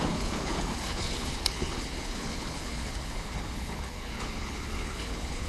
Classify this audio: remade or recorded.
remade